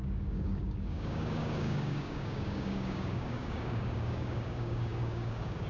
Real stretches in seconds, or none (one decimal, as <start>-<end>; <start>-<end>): none